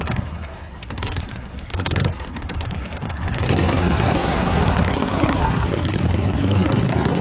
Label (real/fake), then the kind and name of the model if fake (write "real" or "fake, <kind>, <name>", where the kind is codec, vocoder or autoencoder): fake, codec, SNAC